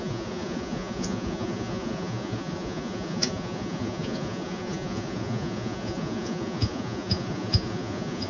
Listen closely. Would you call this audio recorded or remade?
remade